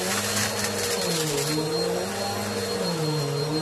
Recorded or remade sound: recorded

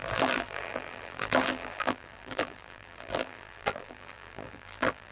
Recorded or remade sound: remade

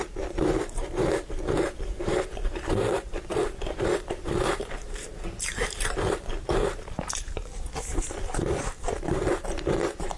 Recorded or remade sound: remade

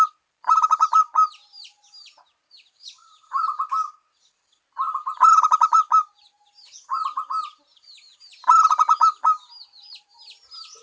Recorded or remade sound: recorded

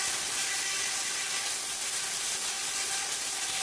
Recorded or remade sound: recorded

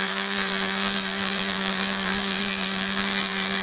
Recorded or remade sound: remade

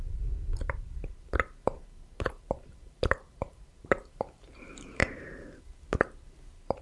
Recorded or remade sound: remade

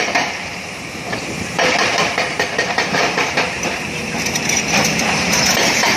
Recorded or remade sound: remade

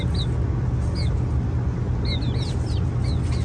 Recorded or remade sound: recorded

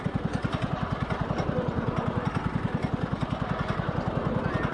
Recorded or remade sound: recorded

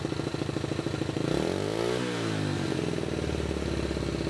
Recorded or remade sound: recorded